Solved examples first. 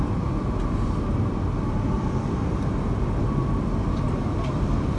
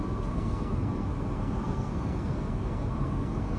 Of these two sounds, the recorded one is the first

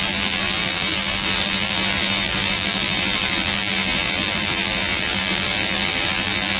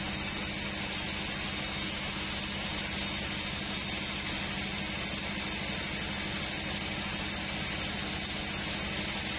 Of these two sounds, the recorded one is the second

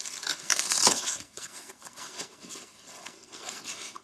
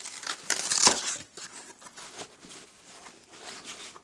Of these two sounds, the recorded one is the second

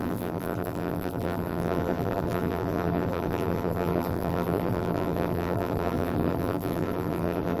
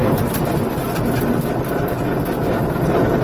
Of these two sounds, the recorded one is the second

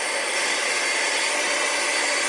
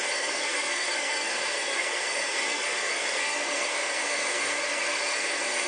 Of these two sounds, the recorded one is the first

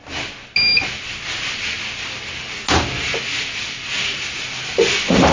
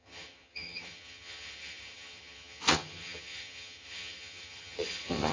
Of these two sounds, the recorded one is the first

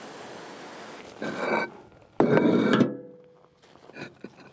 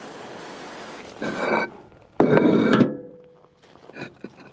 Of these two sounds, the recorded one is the first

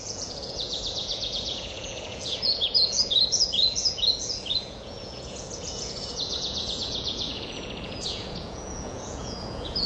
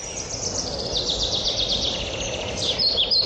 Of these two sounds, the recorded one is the second